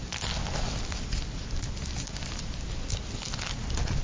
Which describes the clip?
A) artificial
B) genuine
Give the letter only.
B